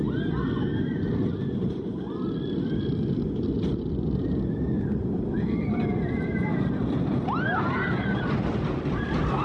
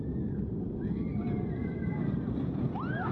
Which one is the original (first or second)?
second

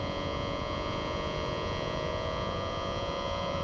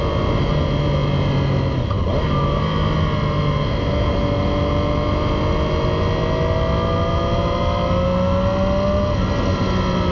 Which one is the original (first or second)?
second